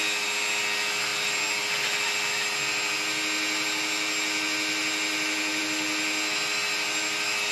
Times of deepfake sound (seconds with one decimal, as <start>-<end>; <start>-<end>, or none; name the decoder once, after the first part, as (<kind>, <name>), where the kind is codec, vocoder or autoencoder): none